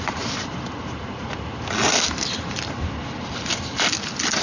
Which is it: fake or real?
fake